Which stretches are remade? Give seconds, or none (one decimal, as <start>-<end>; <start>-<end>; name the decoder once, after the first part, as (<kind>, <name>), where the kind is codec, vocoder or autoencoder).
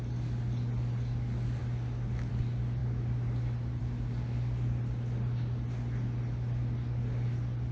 none